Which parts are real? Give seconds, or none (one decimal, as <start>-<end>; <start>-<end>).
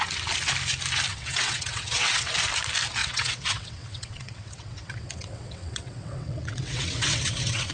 0.0-1.1; 2.3-3.0